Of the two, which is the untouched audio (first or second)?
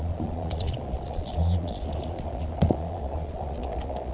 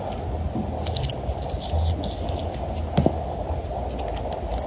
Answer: second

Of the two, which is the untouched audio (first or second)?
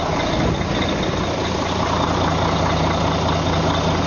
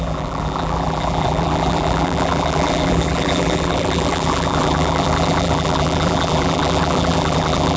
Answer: first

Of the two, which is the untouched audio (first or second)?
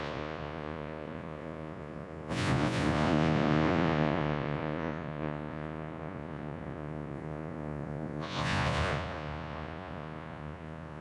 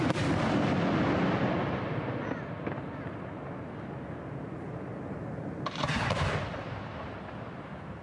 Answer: second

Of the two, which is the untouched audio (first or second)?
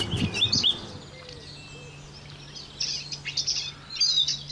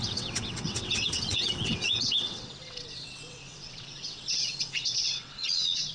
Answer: first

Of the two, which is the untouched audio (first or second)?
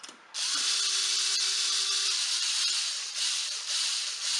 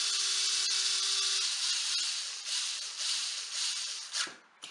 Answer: second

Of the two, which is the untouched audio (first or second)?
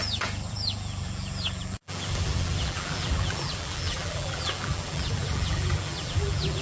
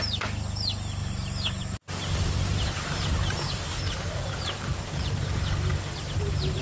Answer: second